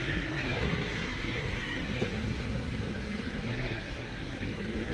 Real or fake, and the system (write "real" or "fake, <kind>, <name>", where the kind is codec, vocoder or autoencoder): fake, codec, SNAC